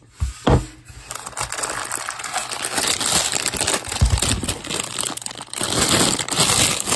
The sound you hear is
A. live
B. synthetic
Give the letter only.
A